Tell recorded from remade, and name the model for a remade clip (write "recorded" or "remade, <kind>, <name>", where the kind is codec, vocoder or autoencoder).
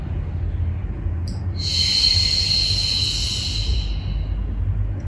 recorded